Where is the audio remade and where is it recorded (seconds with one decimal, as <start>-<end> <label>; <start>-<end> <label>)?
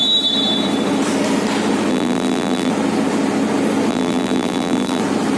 0.0-1.9 recorded; 1.9-2.7 remade; 2.7-3.9 recorded; 3.9-5.0 remade; 5.0-5.4 recorded